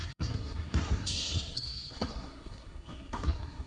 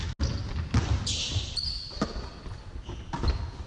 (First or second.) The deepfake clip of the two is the first